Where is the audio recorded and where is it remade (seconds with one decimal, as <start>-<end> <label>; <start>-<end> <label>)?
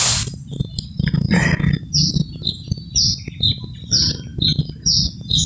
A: 0.0-5.5 recorded